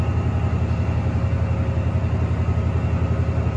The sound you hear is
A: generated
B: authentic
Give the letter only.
B